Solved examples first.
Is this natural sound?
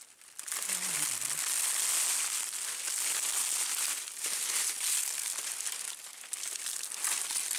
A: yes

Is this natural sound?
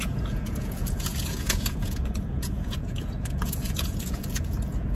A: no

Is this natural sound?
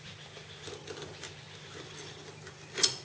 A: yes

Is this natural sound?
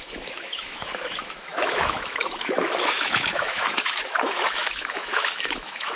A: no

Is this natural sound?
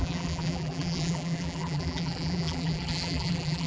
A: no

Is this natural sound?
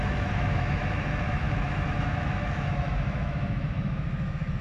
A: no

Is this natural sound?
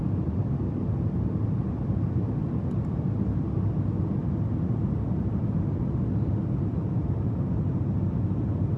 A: yes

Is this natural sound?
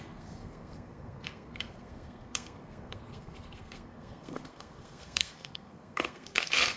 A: no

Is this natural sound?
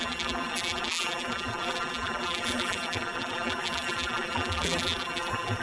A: no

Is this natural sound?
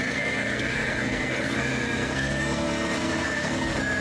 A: no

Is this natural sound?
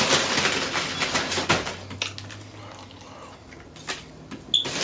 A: yes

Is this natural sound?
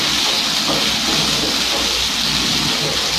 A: yes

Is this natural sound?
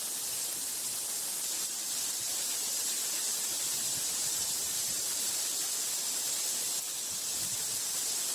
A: no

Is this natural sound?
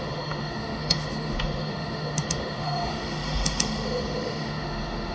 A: no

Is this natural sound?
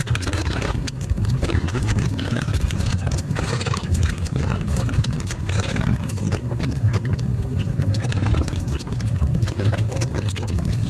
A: no